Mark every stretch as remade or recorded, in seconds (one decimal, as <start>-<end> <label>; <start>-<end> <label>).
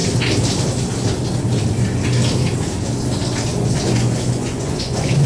0.0-3.5 recorded; 3.5-5.3 remade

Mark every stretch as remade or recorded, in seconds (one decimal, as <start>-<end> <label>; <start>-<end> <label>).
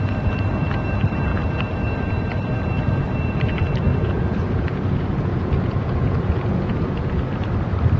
0.0-3.9 recorded; 3.9-7.3 remade; 7.3-8.0 recorded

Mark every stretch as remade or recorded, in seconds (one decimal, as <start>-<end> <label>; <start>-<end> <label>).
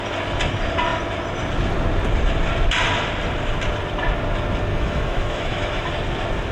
0.0-4.7 recorded; 4.7-5.9 remade; 5.9-6.5 recorded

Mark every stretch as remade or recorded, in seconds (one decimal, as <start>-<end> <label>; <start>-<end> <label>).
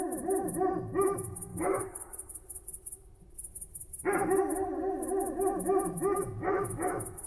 0.0-1.5 recorded; 1.5-2.3 remade; 2.3-7.3 recorded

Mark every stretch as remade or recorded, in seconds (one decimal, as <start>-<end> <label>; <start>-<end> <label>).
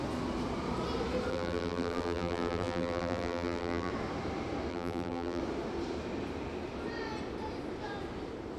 0.0-1.3 recorded; 1.3-3.9 remade; 3.9-4.7 recorded; 4.7-5.4 remade; 5.4-8.6 recorded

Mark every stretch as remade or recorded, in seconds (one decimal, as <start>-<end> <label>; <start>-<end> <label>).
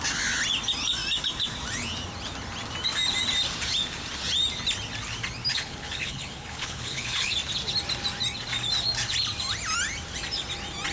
0.0-5.5 recorded; 5.5-7.3 remade; 7.3-10.9 recorded